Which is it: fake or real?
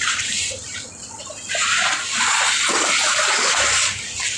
real